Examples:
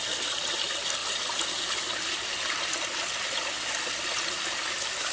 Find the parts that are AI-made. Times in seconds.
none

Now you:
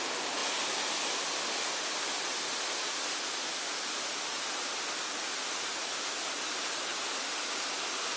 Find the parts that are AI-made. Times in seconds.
none

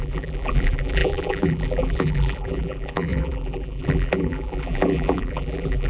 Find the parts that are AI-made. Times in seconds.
0.0-5.9 (vocoder, BigVGAN v2)

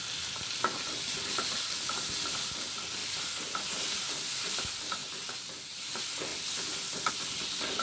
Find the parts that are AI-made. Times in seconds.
3.0-3.6 (vocoder, BigVGAN v2); 6.3-7.1

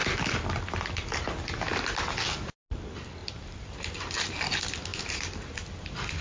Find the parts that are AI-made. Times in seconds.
3.2-4.4 (vocoder, BigVGAN v2); 4.9-5.5

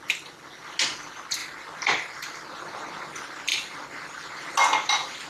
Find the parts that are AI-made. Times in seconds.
1.4-2.5 (vocoder, BigVGAN v2); 3.5-4.3

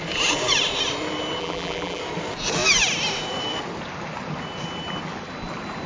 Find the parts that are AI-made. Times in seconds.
1.4-2.0 (vocoder, BigVGAN v2)

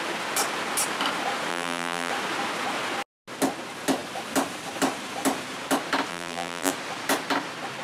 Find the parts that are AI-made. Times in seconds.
1.5-2.1 (vocoder, BigVGAN v2); 6.1-6.7